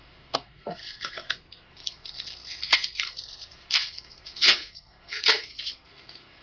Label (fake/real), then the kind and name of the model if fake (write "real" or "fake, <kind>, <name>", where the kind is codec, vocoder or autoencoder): fake, codec, SNAC